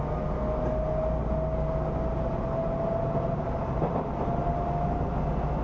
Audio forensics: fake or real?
real